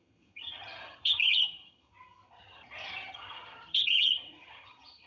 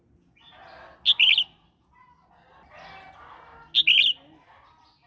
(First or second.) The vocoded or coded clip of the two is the first